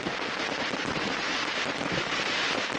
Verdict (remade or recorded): recorded